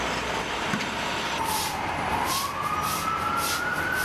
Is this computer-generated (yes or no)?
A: no